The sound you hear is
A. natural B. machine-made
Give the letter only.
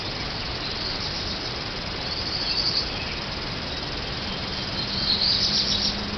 A